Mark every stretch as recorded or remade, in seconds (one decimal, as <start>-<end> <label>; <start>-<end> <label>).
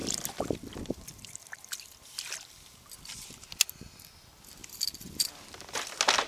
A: 0.0-3.4 remade; 3.4-4.6 recorded; 4.6-5.3 remade; 5.3-6.3 recorded